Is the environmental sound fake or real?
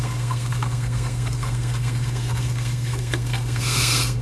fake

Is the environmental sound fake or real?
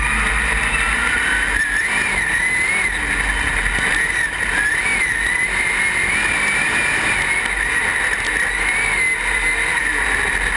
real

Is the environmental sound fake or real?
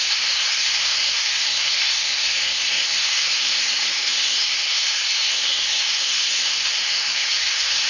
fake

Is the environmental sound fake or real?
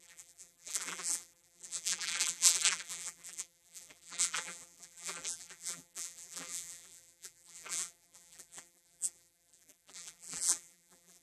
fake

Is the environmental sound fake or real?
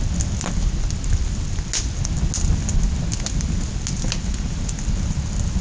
real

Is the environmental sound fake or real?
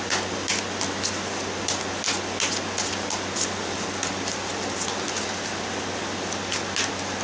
real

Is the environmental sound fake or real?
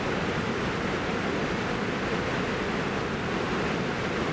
real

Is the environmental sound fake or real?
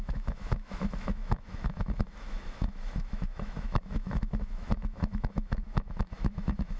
fake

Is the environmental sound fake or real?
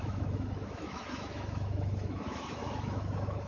fake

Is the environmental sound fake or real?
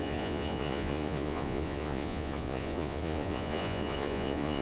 fake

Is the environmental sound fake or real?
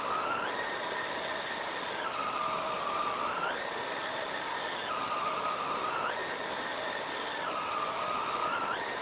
real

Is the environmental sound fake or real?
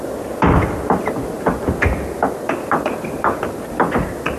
real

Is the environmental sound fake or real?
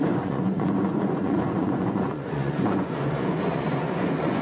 fake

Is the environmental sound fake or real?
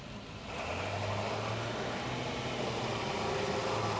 real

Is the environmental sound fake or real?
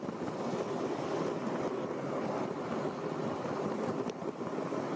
real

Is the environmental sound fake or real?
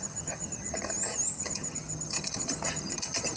fake